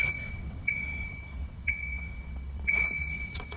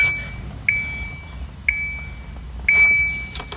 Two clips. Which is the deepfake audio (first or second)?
first